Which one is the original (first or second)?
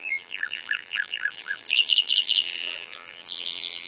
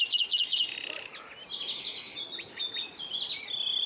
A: second